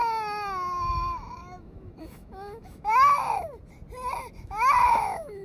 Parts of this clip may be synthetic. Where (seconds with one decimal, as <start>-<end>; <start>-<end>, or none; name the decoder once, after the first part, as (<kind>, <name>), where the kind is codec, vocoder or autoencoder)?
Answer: 0.9-3.2 (autoencoder, DAC-VAE); 4.4-5.4